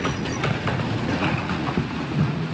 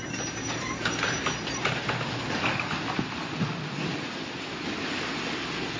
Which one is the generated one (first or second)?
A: first